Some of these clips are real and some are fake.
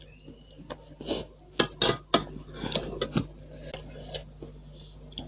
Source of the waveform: real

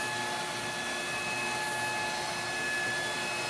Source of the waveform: real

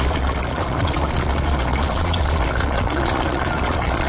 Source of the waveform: fake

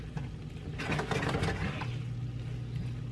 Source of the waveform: real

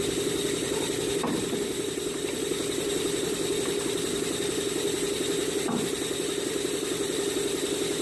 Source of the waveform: real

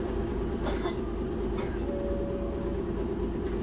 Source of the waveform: real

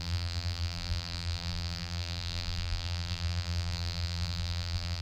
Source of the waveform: fake